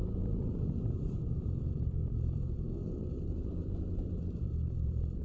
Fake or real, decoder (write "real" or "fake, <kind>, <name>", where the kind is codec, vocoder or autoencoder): fake, vocoder, BigVGAN v2